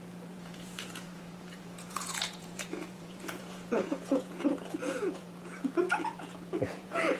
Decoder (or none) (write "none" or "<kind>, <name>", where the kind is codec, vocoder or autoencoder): vocoder, Vocos